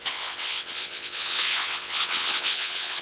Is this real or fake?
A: fake